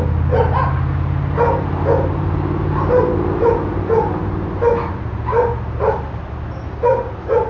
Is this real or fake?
real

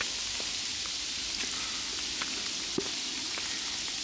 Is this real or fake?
real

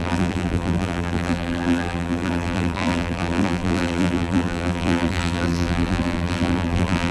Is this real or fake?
fake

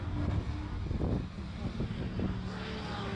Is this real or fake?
real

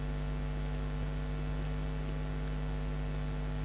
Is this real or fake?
real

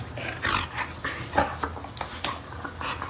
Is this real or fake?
real